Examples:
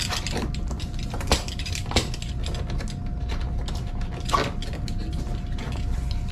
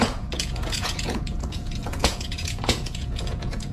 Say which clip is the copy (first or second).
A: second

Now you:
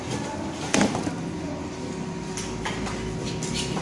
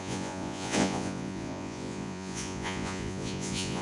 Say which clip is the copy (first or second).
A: second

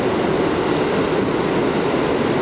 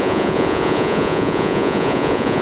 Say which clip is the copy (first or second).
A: second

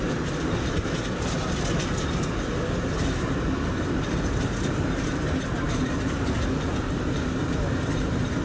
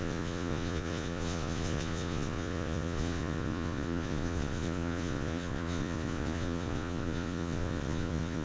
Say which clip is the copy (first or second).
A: second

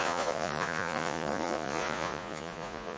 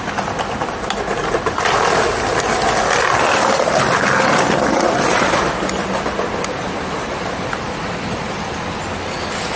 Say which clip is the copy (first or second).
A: first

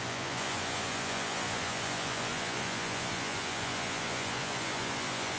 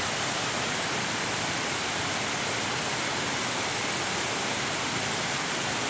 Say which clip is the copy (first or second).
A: first